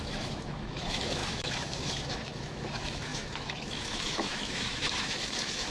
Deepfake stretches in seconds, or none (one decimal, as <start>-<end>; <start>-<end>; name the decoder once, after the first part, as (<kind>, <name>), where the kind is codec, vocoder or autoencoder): 0.0-5.7 (autoencoder, DAC-VAE)